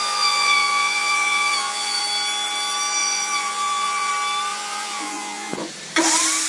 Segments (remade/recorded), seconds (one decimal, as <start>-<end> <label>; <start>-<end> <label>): 0.0-2.0 remade; 2.0-3.0 recorded; 3.0-4.1 remade; 4.1-4.5 recorded; 4.5-5.7 remade; 5.7-6.5 recorded